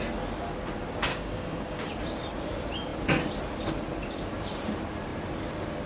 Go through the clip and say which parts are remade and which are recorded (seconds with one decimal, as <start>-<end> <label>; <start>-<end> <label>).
0.0-1.1 recorded; 1.1-1.9 remade; 1.9-5.9 recorded